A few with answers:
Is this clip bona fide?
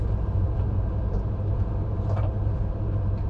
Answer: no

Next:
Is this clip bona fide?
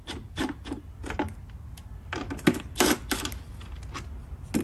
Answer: yes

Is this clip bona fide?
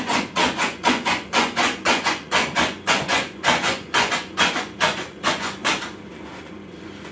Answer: no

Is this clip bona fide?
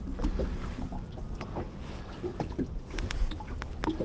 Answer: yes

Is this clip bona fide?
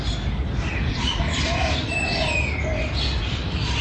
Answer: yes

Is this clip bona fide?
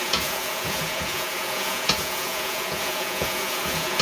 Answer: no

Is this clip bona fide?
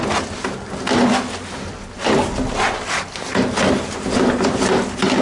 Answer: yes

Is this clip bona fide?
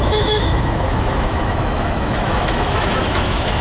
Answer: no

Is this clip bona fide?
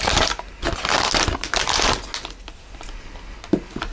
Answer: yes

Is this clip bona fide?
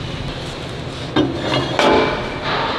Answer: yes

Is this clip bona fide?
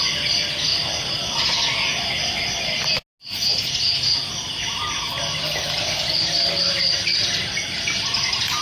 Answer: yes